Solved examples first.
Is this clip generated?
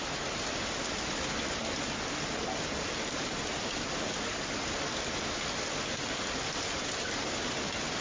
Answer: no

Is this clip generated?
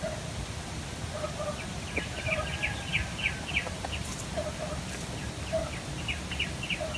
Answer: no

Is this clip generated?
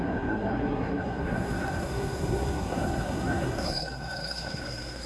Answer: yes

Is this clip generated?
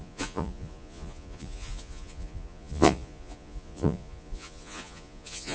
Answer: yes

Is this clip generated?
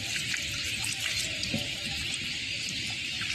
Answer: yes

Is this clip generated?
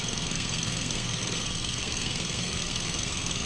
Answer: yes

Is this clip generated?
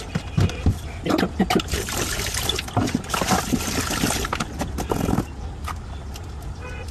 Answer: no